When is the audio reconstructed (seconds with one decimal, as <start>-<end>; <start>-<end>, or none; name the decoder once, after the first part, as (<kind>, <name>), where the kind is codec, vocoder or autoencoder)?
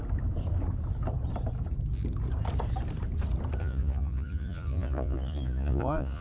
3.6-6.2 (vocoder, Vocos)